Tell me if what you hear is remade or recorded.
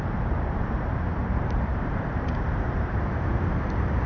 remade